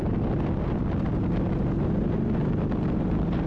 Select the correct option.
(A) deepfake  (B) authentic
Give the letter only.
B